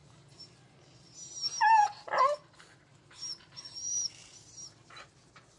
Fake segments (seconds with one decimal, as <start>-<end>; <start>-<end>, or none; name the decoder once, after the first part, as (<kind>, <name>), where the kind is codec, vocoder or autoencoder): 3.0-4.1 (vocoder, BigVGAN v2)